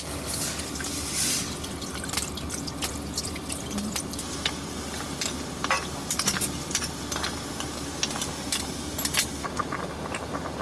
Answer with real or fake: real